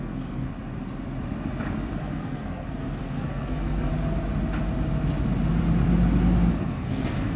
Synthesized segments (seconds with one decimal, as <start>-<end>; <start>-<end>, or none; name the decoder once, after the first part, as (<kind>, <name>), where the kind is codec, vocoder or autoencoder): 0.0-0.5 (codec, SNAC); 2.0-3.9; 6.5-7.4